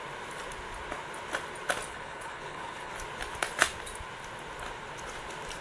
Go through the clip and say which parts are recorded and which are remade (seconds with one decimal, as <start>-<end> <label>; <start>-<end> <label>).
0.0-1.9 recorded; 1.9-2.9 remade; 2.9-5.6 recorded